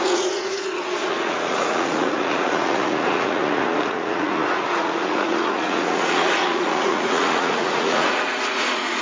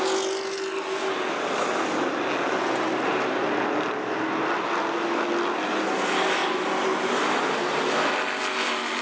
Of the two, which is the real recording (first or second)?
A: second